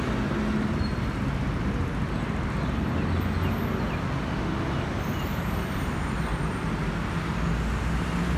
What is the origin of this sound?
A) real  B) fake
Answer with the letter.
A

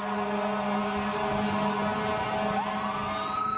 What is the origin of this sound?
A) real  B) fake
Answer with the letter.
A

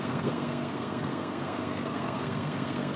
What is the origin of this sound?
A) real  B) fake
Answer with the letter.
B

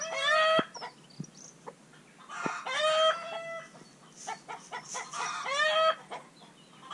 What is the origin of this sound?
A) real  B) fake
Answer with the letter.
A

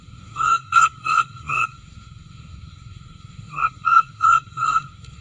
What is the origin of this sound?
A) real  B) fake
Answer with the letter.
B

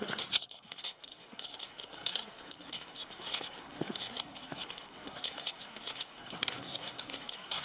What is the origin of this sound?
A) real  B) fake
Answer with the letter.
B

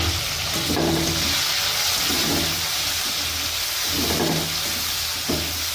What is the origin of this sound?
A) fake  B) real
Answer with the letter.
B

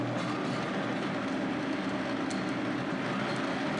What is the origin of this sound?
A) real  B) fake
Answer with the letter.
A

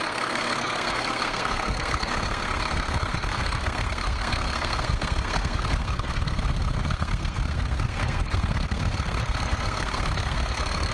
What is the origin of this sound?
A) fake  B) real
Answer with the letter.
A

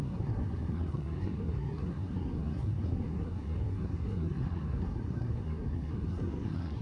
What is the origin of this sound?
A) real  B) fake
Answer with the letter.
B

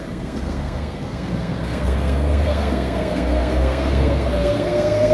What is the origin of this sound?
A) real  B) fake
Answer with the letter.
B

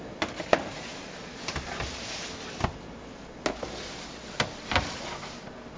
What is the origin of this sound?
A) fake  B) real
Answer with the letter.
B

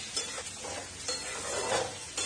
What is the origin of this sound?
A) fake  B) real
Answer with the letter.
B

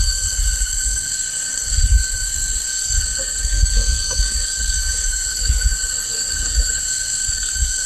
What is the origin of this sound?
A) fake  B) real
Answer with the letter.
A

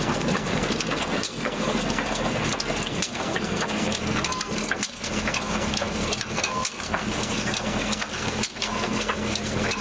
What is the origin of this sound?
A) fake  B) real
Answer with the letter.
A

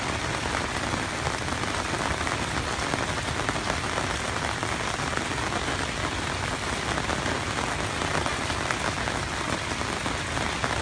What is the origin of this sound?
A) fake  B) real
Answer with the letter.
B